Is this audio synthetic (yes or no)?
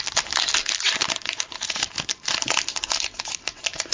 no